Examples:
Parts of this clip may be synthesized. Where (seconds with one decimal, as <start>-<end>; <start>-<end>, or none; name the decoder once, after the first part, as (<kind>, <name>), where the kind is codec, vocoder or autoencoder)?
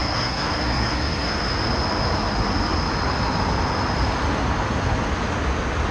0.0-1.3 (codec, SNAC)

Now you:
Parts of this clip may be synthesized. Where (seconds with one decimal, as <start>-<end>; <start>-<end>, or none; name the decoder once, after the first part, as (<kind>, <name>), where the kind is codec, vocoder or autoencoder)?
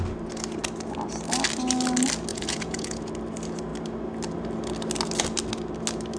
2.3-3.1 (vocoder, Vocos)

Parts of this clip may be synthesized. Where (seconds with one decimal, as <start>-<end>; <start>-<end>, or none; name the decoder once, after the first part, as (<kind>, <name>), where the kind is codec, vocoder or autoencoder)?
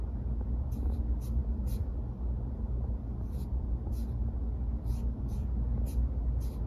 none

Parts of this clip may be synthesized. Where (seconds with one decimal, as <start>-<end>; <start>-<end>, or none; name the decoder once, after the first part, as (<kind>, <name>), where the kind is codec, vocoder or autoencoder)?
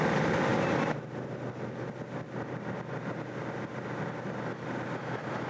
none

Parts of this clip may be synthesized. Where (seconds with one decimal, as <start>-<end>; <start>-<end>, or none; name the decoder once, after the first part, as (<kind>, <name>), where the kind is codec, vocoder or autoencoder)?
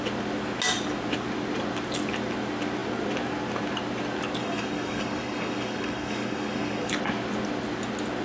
4.4-6.9 (codec, DAC)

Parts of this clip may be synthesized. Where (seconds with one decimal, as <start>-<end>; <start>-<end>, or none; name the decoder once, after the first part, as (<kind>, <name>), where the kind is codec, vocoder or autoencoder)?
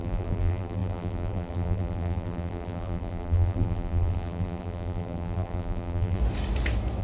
0.0-6.2 (vocoder, BigVGAN v2)